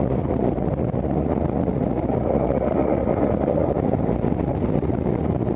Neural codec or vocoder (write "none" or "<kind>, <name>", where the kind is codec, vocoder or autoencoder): vocoder, Vocos